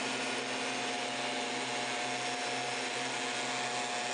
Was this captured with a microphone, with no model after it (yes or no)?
yes